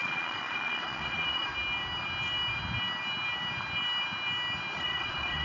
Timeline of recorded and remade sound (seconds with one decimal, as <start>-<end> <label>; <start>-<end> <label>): 0.0-1.5 remade; 1.5-4.7 recorded; 4.7-5.4 remade